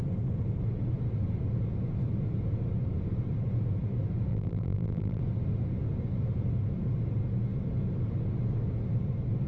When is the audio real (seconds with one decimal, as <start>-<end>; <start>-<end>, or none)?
0.0-4.3; 5.2-9.5